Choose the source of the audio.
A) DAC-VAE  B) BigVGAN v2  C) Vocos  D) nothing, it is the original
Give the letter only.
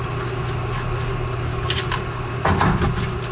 D